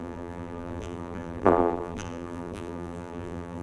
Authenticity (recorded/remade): remade